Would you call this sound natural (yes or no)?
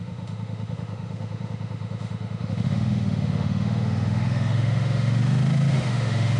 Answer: no